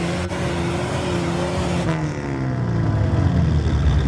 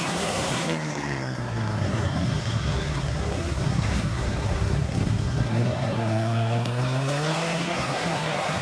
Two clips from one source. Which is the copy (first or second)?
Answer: second